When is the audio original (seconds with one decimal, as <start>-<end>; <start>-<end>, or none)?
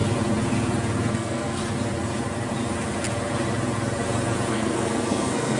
0.0-1.1; 1.6-4.5